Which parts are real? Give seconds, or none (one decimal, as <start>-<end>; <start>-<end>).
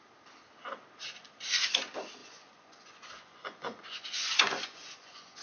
0.0-2.2